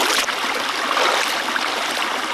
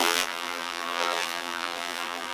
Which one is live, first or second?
first